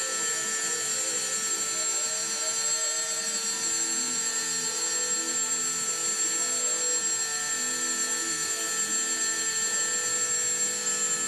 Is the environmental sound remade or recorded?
recorded